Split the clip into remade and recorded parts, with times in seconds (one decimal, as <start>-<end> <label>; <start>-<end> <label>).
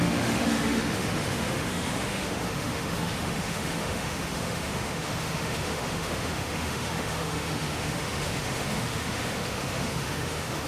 0.0-10.7 remade